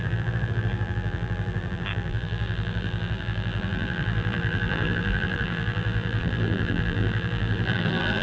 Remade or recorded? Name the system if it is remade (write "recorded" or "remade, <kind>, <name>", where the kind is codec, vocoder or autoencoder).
remade, vocoder, BigVGAN v2